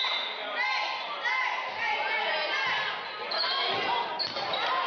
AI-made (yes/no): no